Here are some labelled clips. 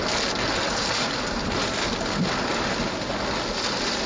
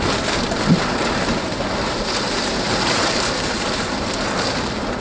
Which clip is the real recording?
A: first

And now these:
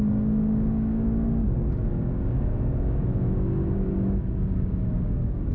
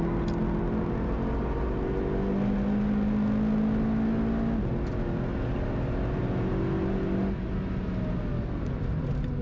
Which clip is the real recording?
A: second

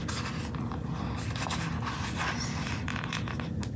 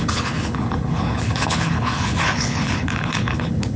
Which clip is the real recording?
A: first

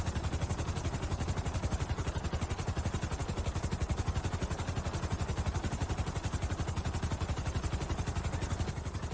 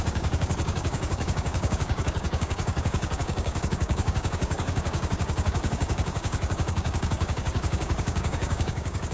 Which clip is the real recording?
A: first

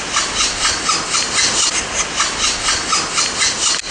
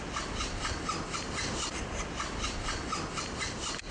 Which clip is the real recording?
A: first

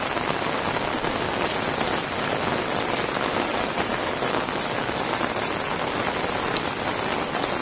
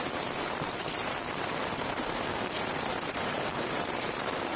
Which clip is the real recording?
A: first